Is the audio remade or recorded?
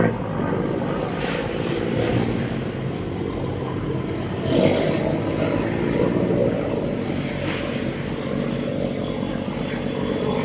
recorded